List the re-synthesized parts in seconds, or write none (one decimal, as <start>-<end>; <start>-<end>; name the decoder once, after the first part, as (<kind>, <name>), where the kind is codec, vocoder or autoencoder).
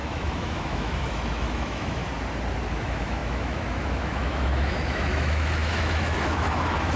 0.0-2.0 (autoencoder, DAC-VAE); 2.7-7.0